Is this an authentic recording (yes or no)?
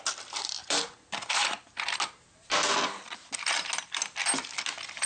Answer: yes